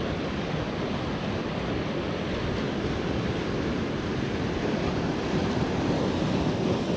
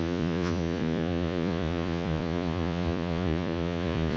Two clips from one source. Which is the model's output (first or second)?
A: second